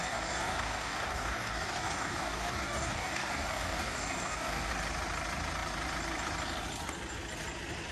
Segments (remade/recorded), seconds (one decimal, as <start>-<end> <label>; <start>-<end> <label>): 0.0-4.7 remade; 4.7-7.9 recorded